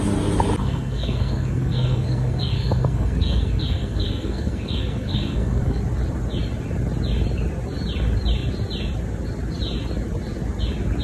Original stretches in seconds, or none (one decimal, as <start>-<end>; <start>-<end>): 0.0-0.6; 5.8-11.0